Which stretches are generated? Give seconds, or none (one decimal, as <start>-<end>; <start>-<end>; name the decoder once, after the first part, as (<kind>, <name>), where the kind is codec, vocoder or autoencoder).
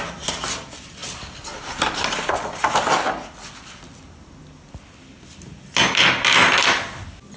none